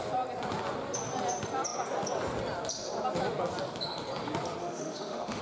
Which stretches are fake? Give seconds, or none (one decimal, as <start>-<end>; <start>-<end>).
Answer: 4.6-5.4